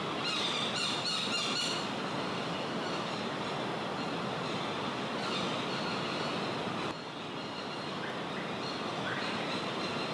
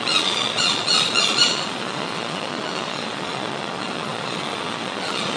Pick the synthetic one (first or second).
second